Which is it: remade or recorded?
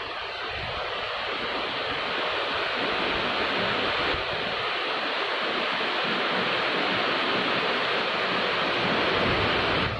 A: recorded